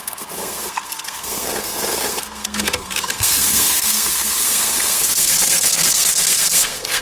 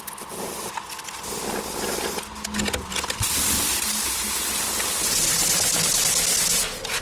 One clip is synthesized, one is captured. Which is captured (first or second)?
second